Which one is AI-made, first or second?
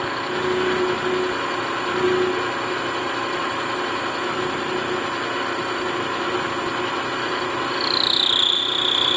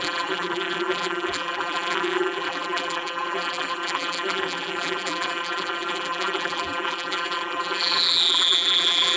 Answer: second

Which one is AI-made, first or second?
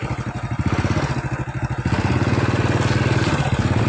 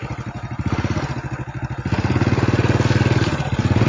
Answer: second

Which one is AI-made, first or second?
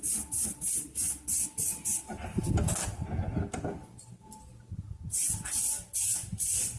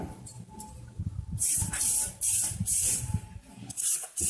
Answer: second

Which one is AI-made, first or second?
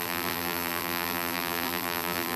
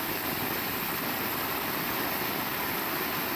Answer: first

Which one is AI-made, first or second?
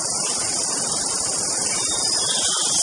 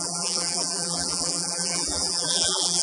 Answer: second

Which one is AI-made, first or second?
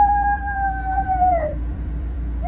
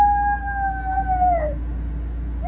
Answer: first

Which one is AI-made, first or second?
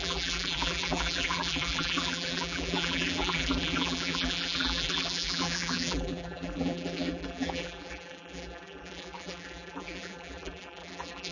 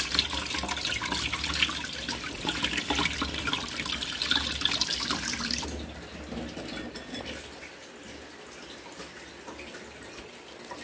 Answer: first